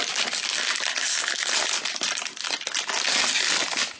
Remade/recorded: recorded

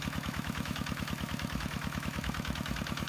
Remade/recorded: remade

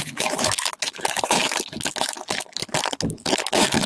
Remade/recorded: remade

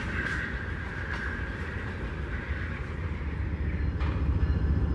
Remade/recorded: recorded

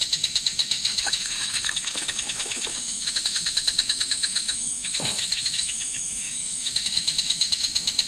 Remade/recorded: remade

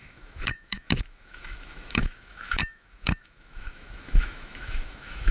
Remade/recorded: remade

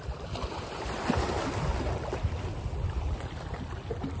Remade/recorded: recorded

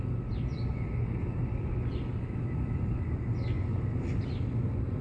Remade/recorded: recorded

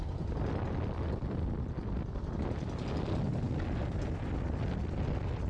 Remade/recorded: recorded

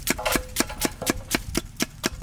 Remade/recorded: recorded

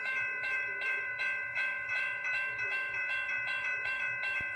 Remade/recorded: remade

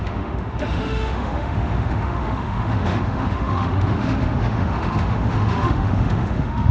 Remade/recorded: remade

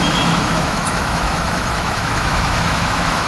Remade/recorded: remade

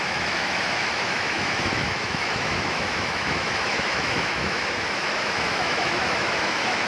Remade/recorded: remade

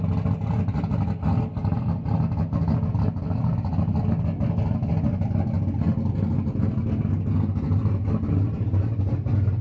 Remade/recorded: recorded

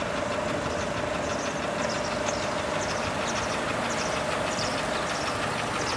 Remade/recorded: recorded